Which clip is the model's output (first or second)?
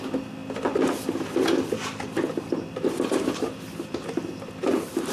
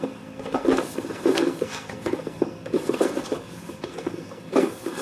second